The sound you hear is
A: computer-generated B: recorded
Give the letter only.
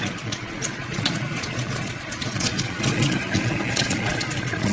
A